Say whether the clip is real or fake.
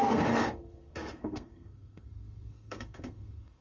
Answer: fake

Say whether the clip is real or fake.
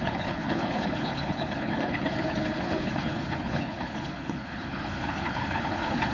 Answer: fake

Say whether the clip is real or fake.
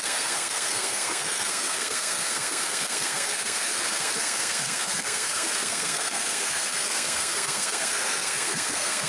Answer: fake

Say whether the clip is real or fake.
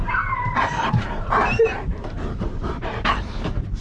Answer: fake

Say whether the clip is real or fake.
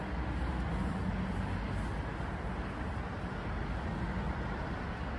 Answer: real